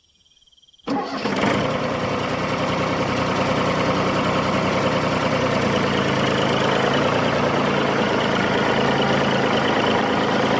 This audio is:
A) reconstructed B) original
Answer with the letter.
B